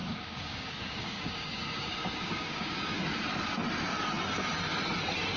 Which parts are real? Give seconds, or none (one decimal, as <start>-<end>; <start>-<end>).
3.0-5.4